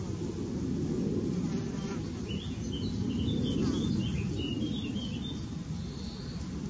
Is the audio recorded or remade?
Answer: recorded